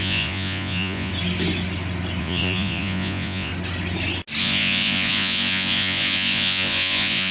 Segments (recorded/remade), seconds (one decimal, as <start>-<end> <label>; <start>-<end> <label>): 0.0-1.1 remade; 1.1-2.2 recorded; 2.2-3.5 remade; 3.5-4.4 recorded; 4.4-7.3 remade